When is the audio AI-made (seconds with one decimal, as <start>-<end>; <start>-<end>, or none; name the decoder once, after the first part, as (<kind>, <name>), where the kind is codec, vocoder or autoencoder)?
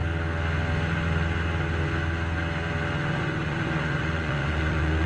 3.1-5.1 (vocoder, Vocos)